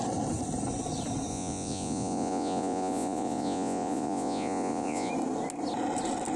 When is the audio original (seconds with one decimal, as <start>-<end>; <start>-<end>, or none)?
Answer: 0.0-1.3; 5.1-6.4